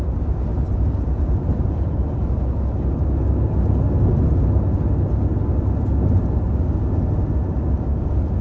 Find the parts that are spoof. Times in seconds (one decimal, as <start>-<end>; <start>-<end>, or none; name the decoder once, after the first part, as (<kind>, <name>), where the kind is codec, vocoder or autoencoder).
0.5-2.3 (vocoder, BigVGAN v2)